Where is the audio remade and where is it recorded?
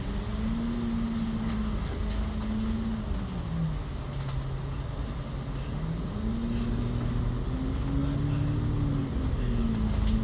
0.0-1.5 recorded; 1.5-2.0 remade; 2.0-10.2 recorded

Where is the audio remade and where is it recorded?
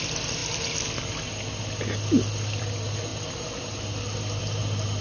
0.0-5.0 recorded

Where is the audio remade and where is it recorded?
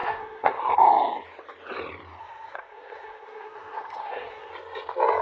0.0-0.7 remade; 0.7-2.2 recorded; 2.2-4.5 remade; 4.5-5.2 recorded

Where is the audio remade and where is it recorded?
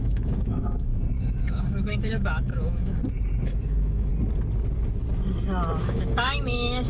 0.0-0.9 remade; 0.9-1.4 recorded; 1.4-3.0 remade; 3.0-3.5 recorded; 3.5-4.1 remade; 4.1-5.8 recorded; 5.8-6.9 remade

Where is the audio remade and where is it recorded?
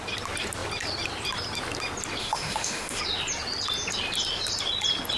0.0-2.2 recorded; 2.2-3.0 remade; 3.0-5.2 recorded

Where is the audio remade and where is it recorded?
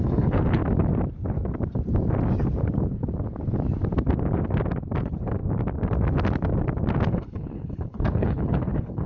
0.0-0.6 remade; 0.6-5.0 recorded; 5.0-5.4 remade; 5.4-7.1 recorded; 7.1-9.1 remade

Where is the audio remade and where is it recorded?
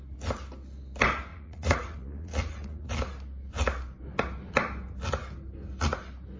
0.0-1.3 recorded; 1.3-2.9 remade; 2.9-6.4 recorded